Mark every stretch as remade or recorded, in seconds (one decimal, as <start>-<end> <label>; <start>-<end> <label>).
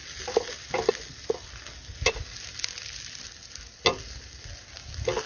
0.0-5.3 recorded